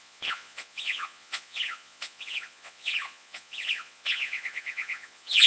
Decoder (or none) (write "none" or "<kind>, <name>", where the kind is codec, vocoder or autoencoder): vocoder, Vocos